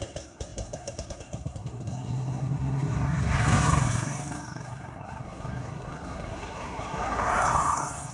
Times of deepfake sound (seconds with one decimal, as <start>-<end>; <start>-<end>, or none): 0.0-8.1